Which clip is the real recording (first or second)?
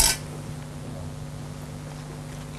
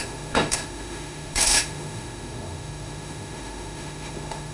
first